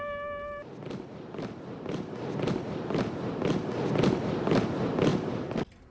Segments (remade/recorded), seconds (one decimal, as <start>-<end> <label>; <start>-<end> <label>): 0.0-5.9 recorded